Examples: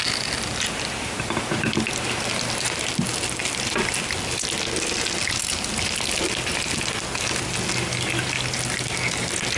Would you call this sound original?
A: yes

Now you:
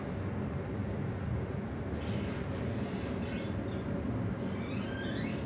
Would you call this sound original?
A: yes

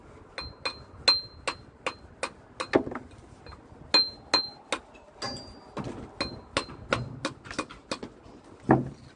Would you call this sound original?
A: yes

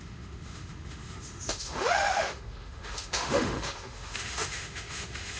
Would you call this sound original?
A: no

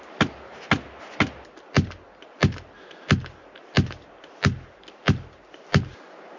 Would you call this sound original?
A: yes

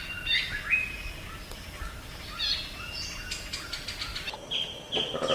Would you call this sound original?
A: yes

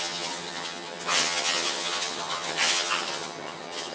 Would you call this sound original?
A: no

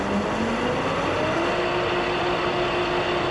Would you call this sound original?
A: yes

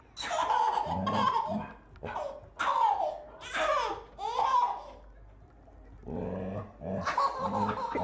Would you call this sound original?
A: yes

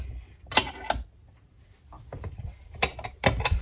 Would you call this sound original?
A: yes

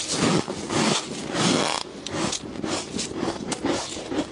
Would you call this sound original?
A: yes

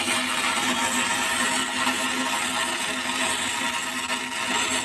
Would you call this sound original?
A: yes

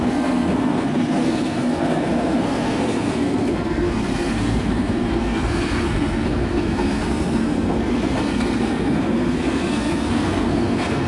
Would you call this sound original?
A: no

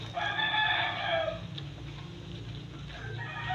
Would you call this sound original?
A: yes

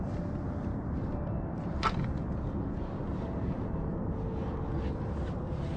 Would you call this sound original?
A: yes